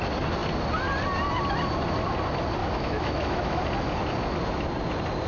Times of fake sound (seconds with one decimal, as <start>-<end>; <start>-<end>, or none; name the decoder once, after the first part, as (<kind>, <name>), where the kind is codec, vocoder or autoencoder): 2.6-3.6 (autoencoder, DAC-VAE)